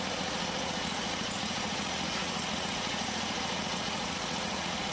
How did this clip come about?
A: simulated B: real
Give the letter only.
A